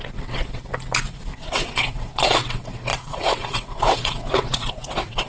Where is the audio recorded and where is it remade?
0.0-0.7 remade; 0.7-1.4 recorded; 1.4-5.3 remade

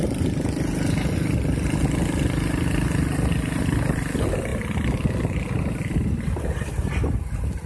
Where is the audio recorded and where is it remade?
0.0-7.7 recorded

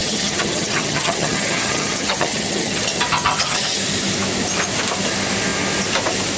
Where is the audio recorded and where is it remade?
0.0-3.8 remade; 3.8-6.4 recorded

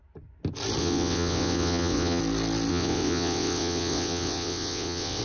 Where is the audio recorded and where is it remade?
0.0-0.8 recorded; 0.8-2.2 remade; 2.2-2.7 recorded; 2.7-5.2 remade